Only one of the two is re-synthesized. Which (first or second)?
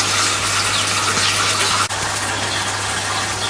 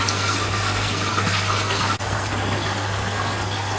second